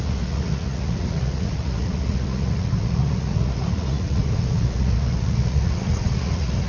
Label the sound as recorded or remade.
remade